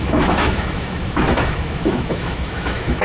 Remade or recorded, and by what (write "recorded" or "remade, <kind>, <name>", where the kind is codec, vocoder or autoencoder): remade, autoencoder, DAC-VAE